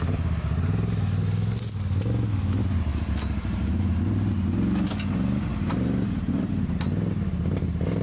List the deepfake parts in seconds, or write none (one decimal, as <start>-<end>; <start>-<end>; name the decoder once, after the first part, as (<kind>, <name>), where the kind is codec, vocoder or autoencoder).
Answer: 2.9-3.8 (vocoder, BigVGAN v2); 5.5-6.8